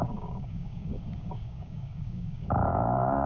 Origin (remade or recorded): remade